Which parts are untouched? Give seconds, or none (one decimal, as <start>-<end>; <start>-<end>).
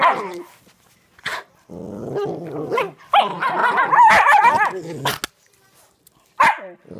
0.0-3.6; 4.5-7.0